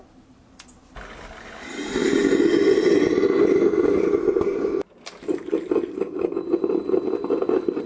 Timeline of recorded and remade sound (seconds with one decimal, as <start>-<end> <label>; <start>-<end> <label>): 0.0-7.9 recorded